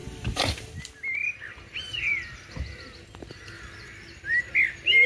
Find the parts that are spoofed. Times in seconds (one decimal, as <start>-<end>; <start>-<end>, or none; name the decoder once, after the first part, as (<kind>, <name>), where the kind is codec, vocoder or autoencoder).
0.0-0.7 (vocoder, BigVGAN v2)